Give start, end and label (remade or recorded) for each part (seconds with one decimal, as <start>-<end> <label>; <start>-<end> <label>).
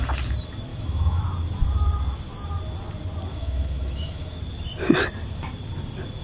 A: 0.0-0.7 recorded; 0.7-1.2 remade; 1.2-3.3 recorded; 3.3-4.4 remade; 4.4-6.2 recorded